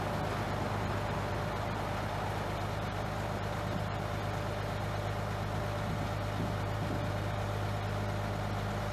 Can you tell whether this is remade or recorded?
recorded